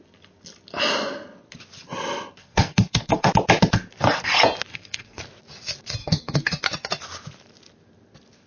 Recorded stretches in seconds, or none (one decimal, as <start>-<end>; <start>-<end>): 0.0-2.4; 3.3-4.7; 5.2-6.0; 6.6-8.5